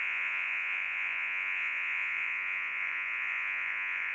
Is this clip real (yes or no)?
no